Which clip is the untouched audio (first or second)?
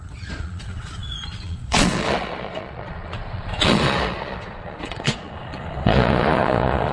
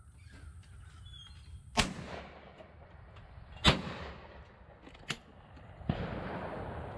second